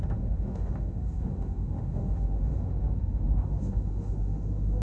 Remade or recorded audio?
remade